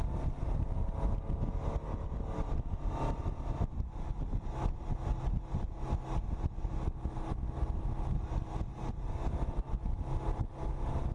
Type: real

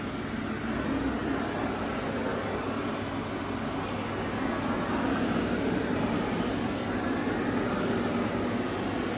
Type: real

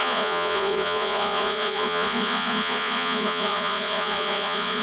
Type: fake